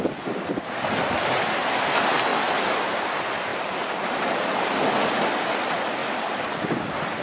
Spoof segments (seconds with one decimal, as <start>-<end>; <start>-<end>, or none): 3.5-4.7; 6.0-6.6